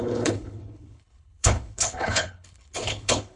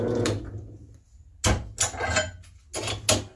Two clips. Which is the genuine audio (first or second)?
second